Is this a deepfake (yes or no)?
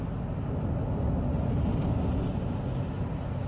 no